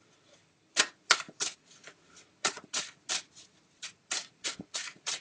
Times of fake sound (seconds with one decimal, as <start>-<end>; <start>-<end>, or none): 1.6-2.8; 4.2-5.2